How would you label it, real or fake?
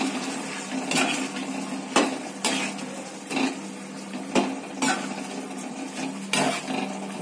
real